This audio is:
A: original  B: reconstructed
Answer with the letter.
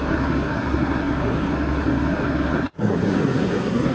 B